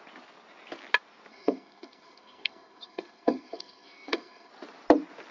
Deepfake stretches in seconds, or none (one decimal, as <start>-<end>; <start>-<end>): 1.3-4.5